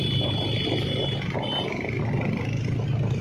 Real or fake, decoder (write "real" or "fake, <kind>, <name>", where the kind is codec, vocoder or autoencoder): real